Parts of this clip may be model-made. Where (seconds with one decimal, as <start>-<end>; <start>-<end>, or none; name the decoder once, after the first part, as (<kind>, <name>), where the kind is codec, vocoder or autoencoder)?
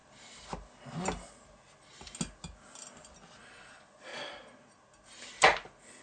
3.6-4.1 (vocoder, Vocos)